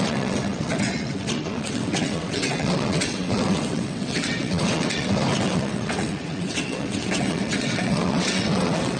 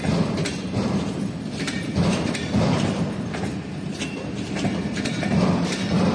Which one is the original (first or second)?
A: second